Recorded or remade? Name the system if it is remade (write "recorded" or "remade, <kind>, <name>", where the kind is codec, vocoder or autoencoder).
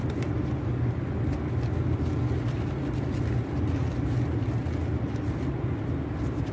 recorded